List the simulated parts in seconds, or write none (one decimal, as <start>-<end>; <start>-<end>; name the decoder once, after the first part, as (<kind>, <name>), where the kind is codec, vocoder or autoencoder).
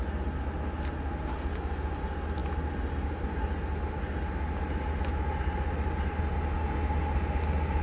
none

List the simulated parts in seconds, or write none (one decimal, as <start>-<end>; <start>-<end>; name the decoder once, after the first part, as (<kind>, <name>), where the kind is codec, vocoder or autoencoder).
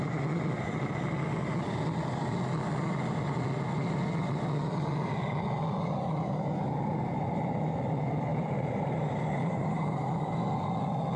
8.3-10.4 (vocoder, BigVGAN v2)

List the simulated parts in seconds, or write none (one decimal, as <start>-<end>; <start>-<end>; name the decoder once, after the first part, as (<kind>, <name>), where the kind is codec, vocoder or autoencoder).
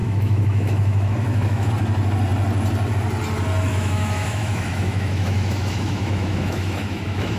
0.0-1.7 (autoencoder, DAC-VAE); 3.7-7.4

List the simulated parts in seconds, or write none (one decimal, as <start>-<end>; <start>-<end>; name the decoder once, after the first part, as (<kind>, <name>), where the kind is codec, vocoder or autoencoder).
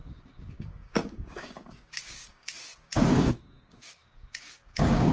0.0-5.1 (codec, DAC)